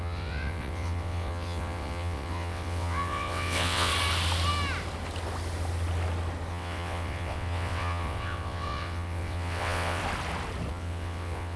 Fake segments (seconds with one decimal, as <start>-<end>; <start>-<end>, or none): 0.0-3.9; 6.5-10.0; 10.7-11.6